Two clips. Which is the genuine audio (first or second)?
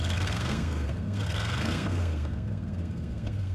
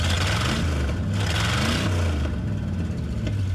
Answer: second